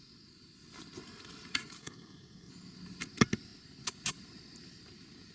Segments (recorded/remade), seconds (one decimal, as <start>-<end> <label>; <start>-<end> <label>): 0.0-1.8 recorded; 1.8-2.5 remade; 2.5-5.3 recorded